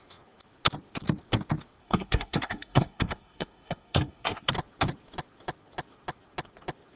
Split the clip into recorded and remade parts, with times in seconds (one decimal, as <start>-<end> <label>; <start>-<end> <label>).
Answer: 0.0-1.8 recorded; 1.8-4.5 remade; 4.5-7.0 recorded